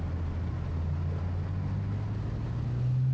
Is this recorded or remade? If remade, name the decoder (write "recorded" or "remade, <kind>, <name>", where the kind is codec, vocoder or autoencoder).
recorded